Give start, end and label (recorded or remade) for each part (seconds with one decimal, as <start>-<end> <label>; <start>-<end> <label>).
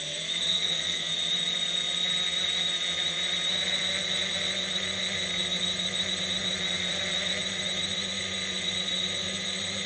0.0-0.4 recorded; 0.4-1.1 remade; 1.1-9.9 recorded